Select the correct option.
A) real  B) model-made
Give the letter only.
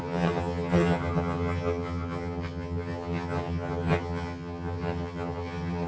B